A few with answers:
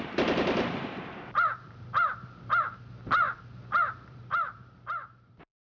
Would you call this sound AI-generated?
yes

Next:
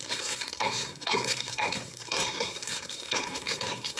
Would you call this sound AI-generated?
yes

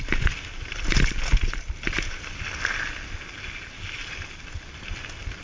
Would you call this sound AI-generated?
no